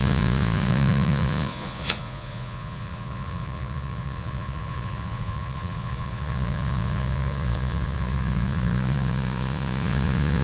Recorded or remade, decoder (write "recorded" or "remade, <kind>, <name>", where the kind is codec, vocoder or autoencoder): remade, vocoder, Vocos